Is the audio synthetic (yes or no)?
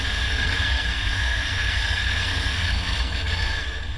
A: yes